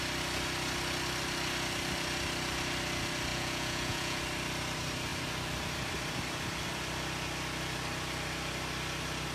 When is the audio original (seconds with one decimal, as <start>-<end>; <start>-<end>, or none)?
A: 0.0-3.3; 4.2-9.3